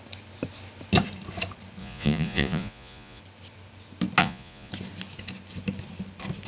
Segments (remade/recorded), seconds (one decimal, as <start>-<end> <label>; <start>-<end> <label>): 0.0-1.8 recorded; 1.8-3.2 remade; 3.2-4.2 recorded; 4.2-4.7 remade; 4.7-6.5 recorded